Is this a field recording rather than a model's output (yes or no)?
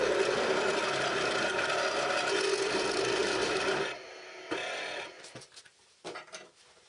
yes